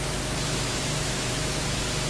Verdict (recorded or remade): remade